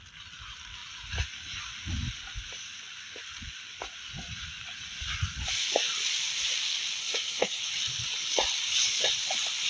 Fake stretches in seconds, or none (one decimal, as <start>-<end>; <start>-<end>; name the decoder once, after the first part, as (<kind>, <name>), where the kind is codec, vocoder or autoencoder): 7.0-7.6 (codec, SNAC)